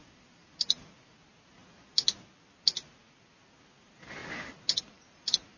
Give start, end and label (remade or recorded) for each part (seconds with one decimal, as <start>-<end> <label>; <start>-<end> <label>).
0.0-5.6 recorded